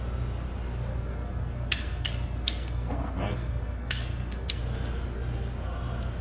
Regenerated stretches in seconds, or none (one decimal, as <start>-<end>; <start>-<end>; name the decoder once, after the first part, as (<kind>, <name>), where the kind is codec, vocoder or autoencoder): 0.9-4.6 (codec, SNAC)